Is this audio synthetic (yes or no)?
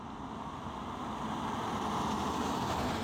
no